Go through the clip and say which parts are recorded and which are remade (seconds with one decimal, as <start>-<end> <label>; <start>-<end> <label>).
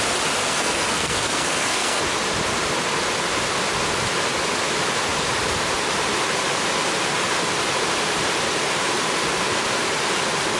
0.0-0.4 recorded; 0.4-2.0 remade; 2.0-10.6 recorded